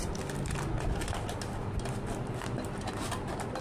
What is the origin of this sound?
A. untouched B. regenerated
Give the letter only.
A